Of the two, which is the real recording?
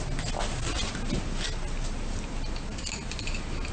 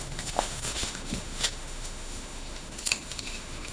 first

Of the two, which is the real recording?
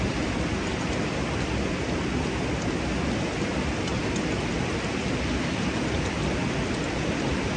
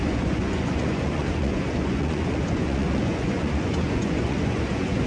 first